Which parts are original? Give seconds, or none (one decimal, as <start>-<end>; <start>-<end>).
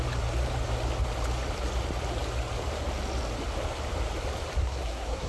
0.0-4.6